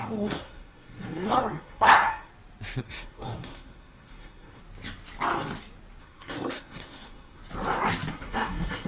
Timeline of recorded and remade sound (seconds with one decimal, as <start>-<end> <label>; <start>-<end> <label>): 0.0-2.3 remade; 2.3-2.8 recorded; 2.8-4.6 remade; 4.6-6.0 recorded; 6.0-7.4 remade; 7.4-8.1 recorded; 8.1-8.9 remade